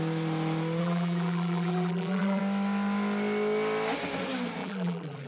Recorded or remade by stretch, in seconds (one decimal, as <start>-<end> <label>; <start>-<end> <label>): 0.0-0.8 recorded; 0.8-2.4 remade; 2.4-4.6 recorded; 4.6-5.3 remade